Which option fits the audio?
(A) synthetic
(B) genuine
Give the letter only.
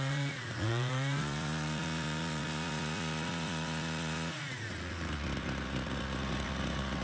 A